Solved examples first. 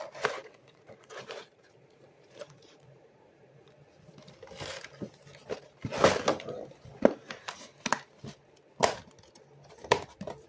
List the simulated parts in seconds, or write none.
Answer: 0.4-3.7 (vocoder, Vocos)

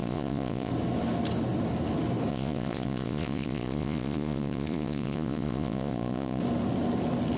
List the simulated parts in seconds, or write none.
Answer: 0.0-0.7 (vocoder, Vocos); 2.3-6.4